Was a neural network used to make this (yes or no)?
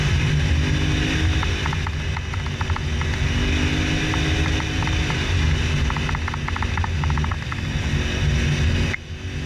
no